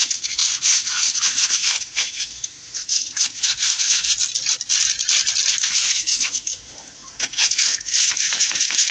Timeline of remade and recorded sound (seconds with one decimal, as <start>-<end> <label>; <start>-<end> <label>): 0.0-4.1 remade; 4.1-5.5 recorded; 5.5-8.9 remade